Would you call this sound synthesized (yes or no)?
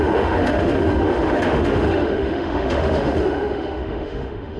yes